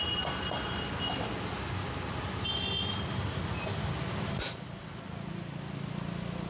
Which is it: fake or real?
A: real